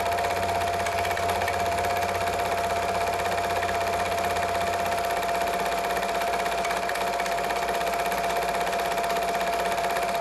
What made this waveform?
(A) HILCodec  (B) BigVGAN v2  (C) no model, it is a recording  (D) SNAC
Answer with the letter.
C